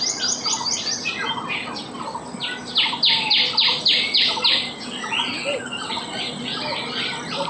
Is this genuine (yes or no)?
yes